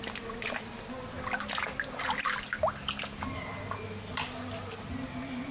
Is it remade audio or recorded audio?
recorded